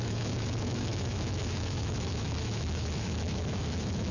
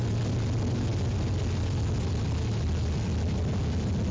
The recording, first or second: second